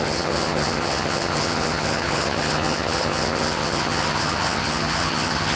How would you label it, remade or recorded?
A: remade